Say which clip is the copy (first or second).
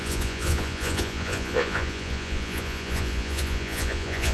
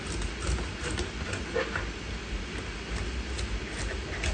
first